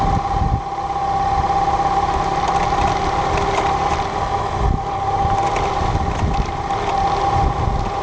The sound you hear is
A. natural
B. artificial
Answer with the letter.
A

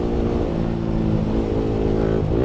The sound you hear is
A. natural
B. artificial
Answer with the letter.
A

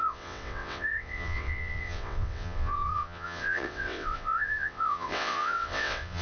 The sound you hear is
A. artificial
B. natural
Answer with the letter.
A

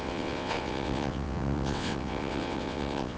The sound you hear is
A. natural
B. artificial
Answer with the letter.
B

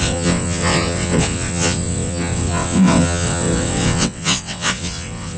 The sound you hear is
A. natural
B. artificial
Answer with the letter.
B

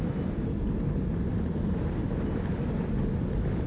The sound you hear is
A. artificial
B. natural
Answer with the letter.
B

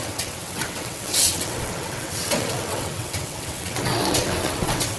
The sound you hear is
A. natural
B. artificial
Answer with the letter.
B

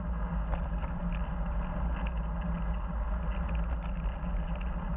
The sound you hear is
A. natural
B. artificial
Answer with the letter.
A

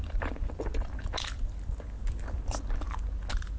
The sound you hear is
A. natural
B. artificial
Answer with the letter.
A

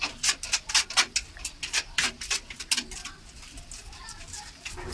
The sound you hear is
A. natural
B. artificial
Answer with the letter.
A